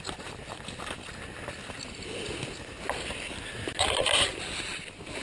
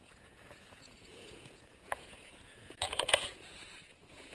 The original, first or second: first